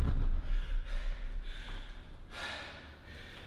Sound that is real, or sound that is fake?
real